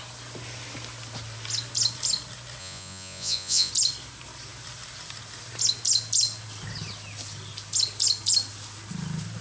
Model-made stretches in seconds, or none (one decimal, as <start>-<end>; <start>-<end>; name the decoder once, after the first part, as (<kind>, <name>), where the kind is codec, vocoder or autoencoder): 2.6-3.7 (vocoder, Vocos)